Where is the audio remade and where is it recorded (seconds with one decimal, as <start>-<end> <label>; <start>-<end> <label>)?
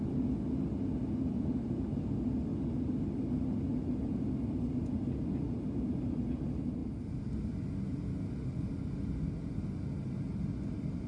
0.0-11.1 recorded